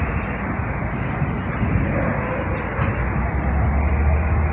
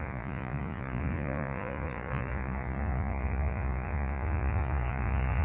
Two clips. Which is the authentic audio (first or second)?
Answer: first